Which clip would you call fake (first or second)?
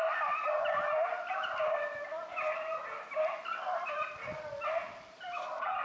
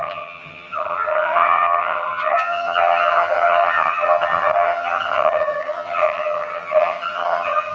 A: second